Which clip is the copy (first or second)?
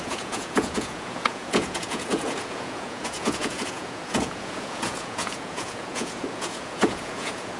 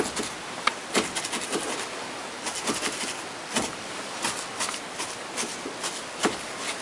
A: first